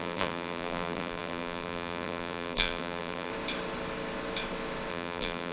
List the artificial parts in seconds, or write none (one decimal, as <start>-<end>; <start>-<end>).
0.0-3.3; 4.9-5.5